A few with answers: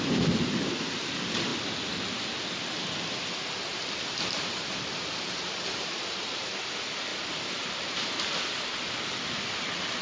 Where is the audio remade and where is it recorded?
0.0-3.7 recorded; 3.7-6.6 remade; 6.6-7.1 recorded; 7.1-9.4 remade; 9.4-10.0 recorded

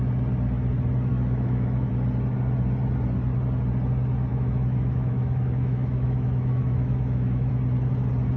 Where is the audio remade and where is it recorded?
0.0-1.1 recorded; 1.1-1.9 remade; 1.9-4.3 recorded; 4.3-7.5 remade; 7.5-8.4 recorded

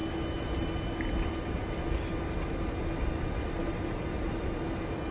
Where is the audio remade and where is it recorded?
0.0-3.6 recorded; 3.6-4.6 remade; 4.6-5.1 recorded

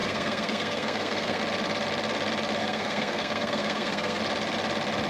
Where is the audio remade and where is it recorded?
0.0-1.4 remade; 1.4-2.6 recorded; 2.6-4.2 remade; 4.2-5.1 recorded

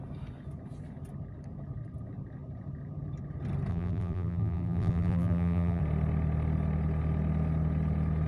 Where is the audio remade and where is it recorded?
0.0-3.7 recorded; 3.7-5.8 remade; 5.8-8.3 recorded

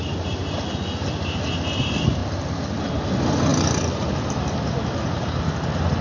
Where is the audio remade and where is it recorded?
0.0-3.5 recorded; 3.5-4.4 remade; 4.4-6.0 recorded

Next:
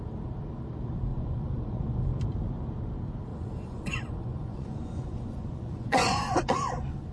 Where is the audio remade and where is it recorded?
0.0-1.1 recorded; 1.1-2.0 remade; 2.0-3.3 recorded; 3.3-7.1 remade